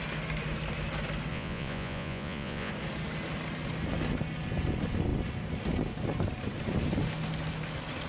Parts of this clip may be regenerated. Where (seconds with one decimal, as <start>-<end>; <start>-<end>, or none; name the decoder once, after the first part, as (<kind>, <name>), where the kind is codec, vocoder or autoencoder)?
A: 1.3-2.7 (vocoder, Vocos)